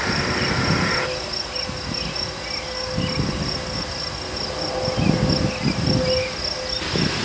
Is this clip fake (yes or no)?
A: no